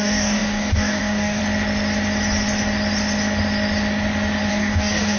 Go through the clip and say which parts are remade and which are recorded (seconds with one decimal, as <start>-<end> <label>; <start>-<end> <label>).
0.0-1.4 remade; 1.4-4.5 recorded; 4.5-5.2 remade